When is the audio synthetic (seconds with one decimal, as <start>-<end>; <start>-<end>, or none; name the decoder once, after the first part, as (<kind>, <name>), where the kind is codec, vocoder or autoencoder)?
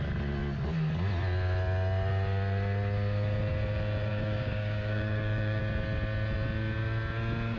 4.1-5.6 (codec, DAC)